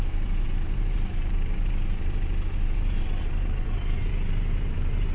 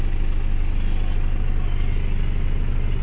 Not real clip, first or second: first